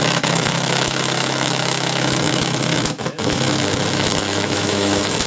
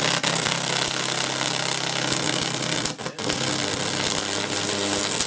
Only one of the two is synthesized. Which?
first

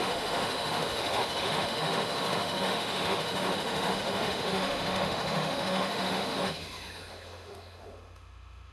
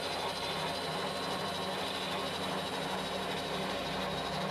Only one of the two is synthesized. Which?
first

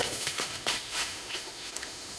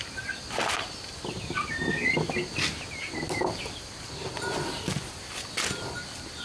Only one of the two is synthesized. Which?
first